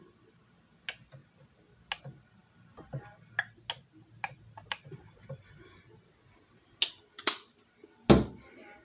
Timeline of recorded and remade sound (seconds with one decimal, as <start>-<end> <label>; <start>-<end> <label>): 0.0-8.8 recorded